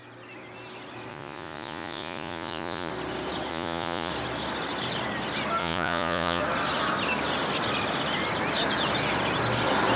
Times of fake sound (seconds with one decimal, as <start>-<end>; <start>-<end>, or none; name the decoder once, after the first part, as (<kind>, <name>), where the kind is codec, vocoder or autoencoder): 1.1-2.9 (vocoder, Vocos); 3.5-4.1; 5.6-6.4